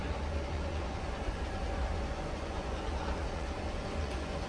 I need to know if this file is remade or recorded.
remade